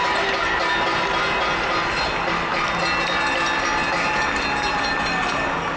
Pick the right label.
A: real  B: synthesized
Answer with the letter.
A